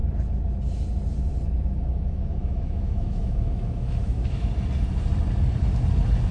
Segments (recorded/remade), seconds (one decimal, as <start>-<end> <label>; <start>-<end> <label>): 0.0-1.8 recorded; 1.8-4.5 remade; 4.5-6.3 recorded